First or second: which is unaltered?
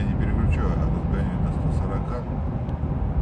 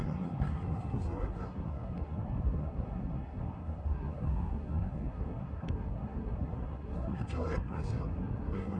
first